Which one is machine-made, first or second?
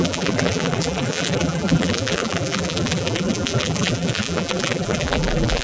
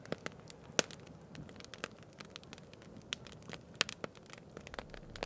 first